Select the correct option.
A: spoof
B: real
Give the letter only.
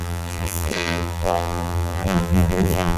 A